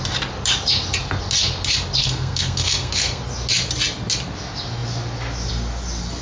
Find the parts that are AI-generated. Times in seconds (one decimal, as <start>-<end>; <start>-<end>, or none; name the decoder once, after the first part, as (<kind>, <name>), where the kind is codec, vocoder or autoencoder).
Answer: 2.0-3.2 (codec, SNAC)

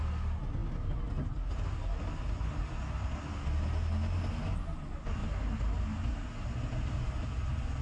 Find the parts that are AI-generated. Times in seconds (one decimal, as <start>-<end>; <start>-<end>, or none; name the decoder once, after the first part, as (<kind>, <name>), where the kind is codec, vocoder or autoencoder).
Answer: none

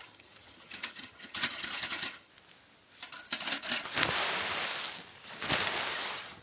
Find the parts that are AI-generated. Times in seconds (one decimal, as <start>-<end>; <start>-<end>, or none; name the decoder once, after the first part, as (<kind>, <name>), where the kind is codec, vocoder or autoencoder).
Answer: 0.0-2.3 (vocoder, HiFi-GAN); 5.9-6.4

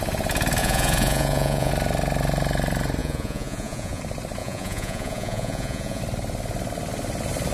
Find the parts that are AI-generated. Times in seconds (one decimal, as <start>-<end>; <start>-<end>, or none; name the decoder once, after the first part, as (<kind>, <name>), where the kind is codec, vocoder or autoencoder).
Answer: 0.6-1.7 (vocoder, Vocos); 3.0-4.0; 4.4-6.0

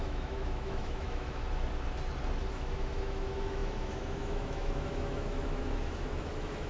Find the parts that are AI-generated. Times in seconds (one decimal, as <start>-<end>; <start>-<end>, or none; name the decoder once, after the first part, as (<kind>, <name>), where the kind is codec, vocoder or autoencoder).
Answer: 0.0-1.4 (autoencoder, DAC-VAE); 2.5-6.7

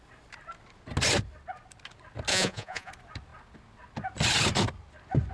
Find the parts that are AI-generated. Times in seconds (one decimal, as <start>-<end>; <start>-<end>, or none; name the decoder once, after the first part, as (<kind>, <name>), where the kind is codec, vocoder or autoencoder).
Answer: 2.3-2.9 (vocoder, Vocos)

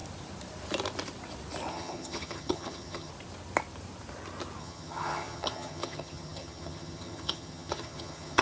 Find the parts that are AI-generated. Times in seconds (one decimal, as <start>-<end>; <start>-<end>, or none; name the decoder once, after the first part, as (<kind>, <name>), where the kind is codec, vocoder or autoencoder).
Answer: 1.7-3.1 (vocoder, HiFi-GAN); 4.6-8.4